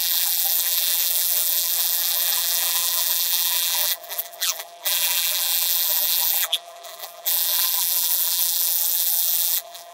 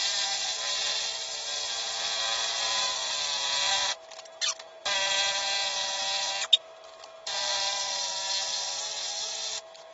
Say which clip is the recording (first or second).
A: second